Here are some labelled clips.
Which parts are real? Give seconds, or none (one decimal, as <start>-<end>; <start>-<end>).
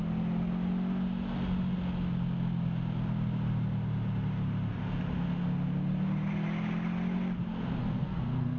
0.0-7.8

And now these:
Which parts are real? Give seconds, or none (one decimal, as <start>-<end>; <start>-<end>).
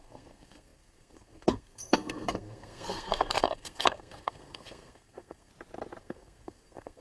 5.5-6.0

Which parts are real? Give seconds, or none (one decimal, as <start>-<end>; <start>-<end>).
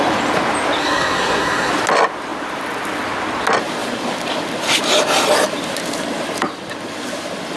0.0-0.8; 1.7-7.6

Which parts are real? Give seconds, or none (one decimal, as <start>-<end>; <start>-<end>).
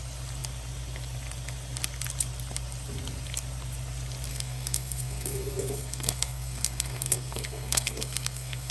0.0-4.3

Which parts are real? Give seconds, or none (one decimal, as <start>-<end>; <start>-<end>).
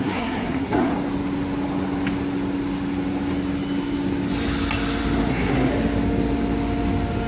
0.9-5.3; 5.7-7.3